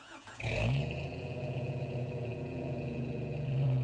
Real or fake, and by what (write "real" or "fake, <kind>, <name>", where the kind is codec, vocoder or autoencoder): fake, vocoder, Vocos